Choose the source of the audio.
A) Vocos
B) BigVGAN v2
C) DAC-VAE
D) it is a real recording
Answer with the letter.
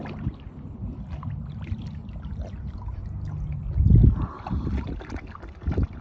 D